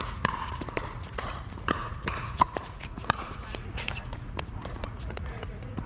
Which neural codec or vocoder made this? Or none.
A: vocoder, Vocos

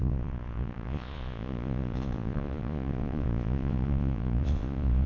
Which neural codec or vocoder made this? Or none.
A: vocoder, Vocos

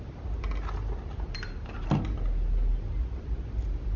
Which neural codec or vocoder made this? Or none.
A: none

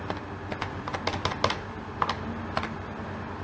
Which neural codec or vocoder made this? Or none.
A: none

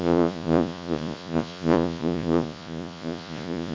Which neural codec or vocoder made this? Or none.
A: vocoder, Vocos